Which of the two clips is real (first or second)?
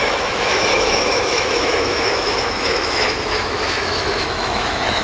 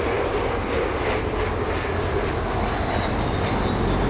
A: second